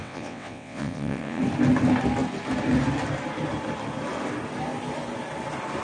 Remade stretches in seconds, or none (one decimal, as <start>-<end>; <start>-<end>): 0.0-1.4